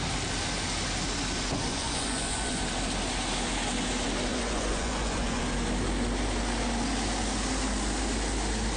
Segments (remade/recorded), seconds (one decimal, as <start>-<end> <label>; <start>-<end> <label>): 0.0-1.7 recorded; 1.7-2.6 remade; 2.6-4.3 recorded; 4.3-5.4 remade; 5.4-8.8 recorded